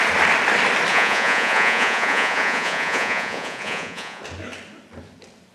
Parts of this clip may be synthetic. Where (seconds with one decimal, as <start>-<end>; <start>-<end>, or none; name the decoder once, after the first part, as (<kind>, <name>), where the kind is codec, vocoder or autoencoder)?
0.9-4.2 (vocoder, Vocos)